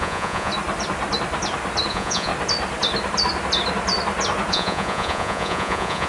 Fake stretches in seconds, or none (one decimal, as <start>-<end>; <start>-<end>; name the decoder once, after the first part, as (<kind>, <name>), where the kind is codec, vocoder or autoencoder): 0.0-0.5 (vocoder, Vocos); 1.9-2.3; 4.5-6.1